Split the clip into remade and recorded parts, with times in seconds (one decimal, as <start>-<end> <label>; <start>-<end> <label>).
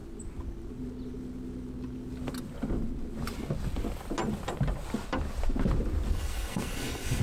0.0-6.1 recorded; 6.1-7.2 remade